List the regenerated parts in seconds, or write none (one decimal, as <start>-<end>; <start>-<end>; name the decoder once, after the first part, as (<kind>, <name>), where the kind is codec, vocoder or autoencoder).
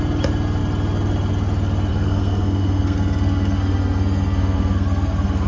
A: 1.9-5.5 (codec, SNAC)